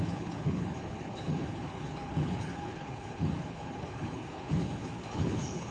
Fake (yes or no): yes